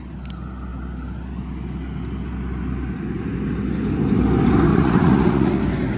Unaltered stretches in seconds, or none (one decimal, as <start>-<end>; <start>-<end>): 0.0-4.7; 5.6-6.0